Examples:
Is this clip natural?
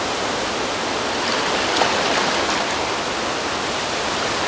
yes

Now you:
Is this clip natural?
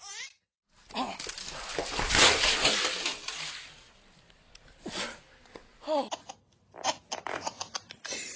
yes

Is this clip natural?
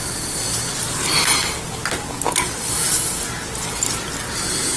yes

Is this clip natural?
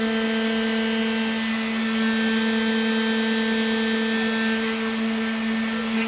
yes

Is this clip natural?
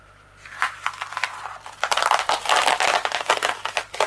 no